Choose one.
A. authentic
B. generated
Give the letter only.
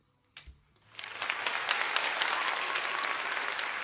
A